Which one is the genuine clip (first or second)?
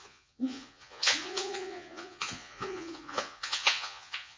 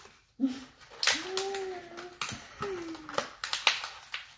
second